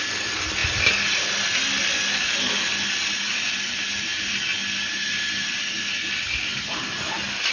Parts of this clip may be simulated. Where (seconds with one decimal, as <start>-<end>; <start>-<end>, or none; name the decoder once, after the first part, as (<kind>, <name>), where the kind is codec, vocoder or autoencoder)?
none